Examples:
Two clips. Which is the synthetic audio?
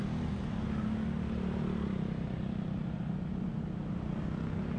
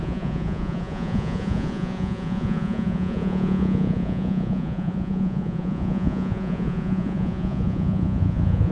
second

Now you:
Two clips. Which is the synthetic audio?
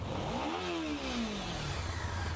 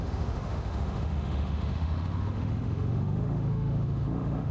second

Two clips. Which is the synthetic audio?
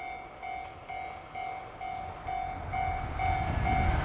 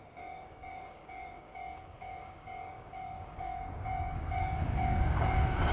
second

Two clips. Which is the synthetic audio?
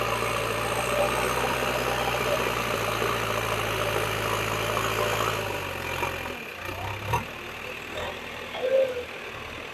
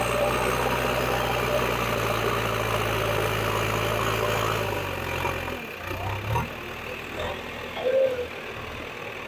first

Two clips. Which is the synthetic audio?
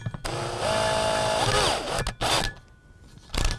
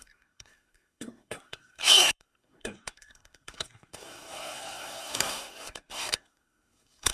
second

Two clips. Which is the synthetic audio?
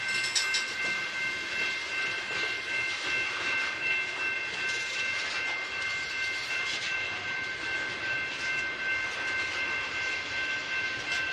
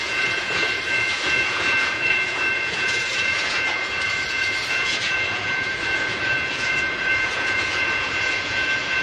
second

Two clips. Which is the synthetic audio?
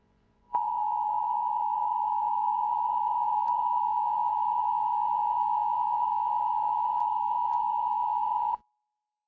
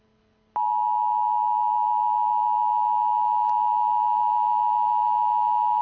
first